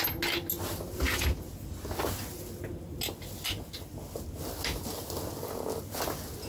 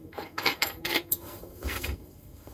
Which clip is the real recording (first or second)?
first